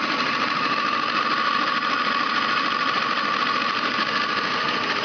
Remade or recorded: recorded